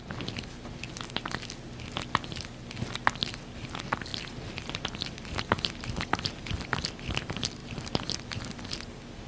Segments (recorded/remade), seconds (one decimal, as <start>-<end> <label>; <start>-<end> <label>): 0.0-9.3 recorded